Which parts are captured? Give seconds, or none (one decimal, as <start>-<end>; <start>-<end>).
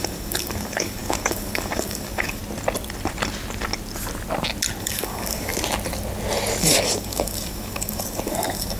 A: 2.4-4.8; 5.5-6.6